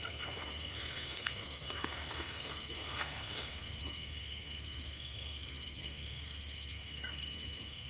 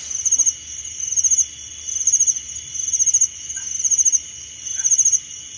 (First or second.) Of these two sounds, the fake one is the first